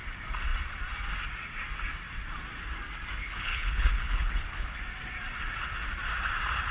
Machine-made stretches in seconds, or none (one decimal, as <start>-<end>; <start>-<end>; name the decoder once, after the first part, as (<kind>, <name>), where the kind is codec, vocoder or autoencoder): 3.2-4.8 (codec, HILCodec)